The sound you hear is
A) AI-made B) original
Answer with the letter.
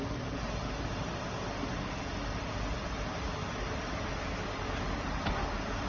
B